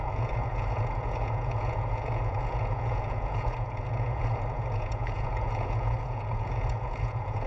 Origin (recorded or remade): remade